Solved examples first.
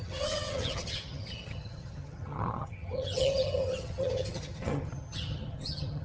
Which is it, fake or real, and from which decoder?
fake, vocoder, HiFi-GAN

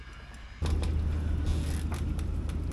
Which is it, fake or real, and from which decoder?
real